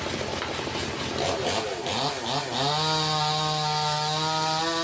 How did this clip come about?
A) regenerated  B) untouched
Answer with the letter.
B